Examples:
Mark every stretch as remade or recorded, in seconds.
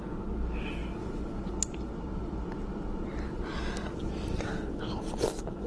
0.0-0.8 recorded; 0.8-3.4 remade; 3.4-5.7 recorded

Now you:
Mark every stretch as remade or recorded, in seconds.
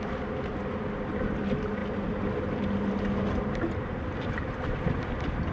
0.0-5.5 recorded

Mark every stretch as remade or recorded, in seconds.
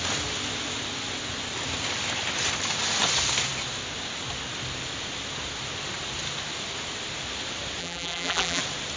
0.0-7.8 recorded; 7.8-8.6 remade; 8.6-9.0 recorded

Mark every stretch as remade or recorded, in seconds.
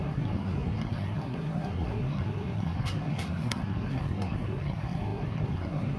0.0-6.0 remade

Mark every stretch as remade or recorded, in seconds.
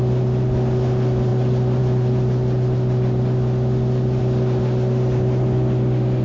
0.0-6.2 recorded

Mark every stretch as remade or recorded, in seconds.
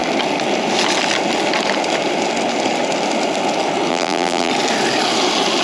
0.0-3.9 recorded; 3.9-4.5 remade; 4.5-5.6 recorded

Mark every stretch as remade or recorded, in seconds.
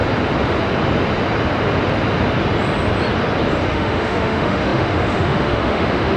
0.0-3.7 recorded; 3.7-6.2 remade